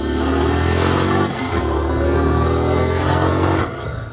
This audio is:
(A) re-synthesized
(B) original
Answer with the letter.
A